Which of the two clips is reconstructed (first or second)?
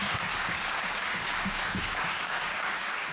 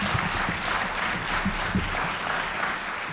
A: first